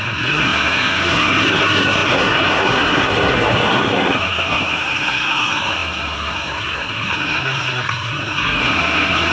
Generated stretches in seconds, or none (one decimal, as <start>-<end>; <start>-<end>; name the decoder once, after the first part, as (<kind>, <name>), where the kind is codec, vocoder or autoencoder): 0.0-9.3 (codec, SNAC)